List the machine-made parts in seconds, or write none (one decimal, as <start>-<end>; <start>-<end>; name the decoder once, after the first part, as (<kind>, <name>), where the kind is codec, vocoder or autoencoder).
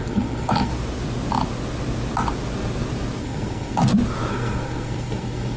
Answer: 0.0-0.7 (codec, SNAC); 3.2-3.8; 4.3-5.6